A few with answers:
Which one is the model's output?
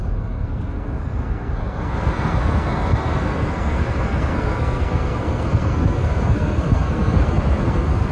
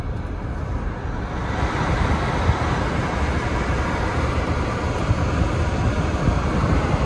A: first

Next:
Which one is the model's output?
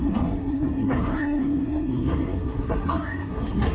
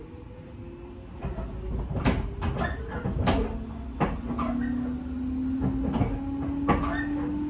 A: first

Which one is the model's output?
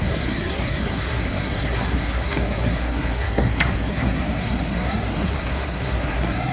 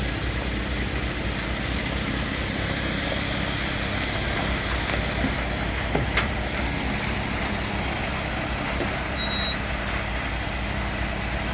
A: first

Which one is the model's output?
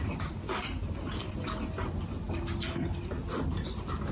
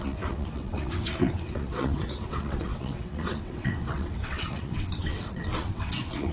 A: second